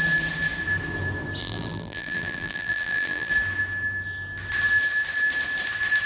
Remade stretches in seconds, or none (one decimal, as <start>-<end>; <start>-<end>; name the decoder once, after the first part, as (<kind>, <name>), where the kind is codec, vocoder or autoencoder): 1.4-3.3 (vocoder, BigVGAN v2)